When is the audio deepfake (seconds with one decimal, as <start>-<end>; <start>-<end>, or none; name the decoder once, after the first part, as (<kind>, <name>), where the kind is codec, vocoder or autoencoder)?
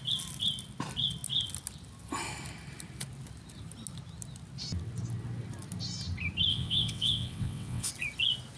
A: 6.5-7.9 (vocoder, WaveNeXt)